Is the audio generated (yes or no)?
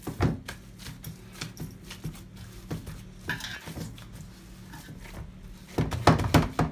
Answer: no